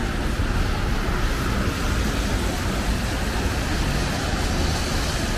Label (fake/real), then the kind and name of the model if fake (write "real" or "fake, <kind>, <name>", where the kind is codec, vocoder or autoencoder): real